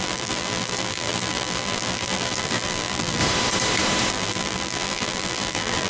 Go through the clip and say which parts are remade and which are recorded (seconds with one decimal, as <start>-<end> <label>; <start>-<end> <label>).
0.0-3.2 remade; 3.2-4.1 recorded; 4.1-5.9 remade